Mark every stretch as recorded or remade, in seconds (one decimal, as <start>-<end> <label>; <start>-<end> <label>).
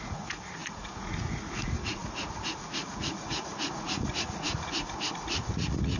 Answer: 0.0-6.0 remade